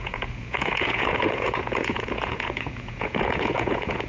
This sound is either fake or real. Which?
fake